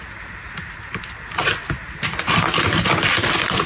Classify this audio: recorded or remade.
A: recorded